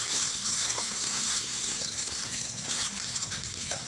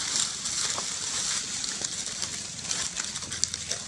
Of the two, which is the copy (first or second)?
first